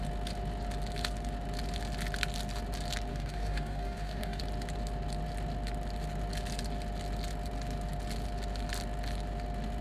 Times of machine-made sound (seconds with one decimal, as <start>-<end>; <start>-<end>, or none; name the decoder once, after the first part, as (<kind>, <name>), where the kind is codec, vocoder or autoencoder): 3.1-4.4 (codec, DAC)